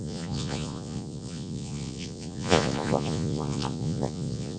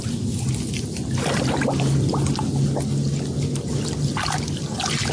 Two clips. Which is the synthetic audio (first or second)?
first